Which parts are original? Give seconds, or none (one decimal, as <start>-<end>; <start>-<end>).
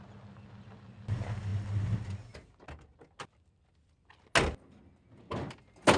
0.0-6.0